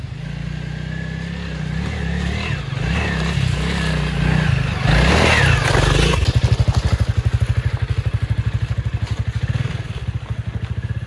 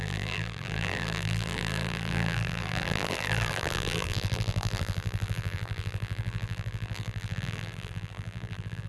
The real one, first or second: first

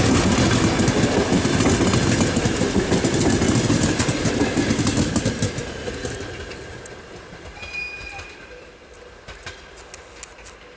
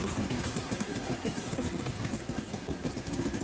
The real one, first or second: first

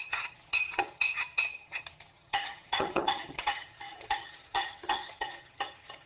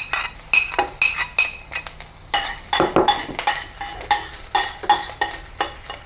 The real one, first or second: second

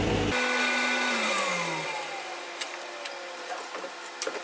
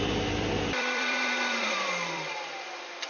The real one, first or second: first